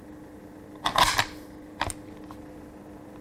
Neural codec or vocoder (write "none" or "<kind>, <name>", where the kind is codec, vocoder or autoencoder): none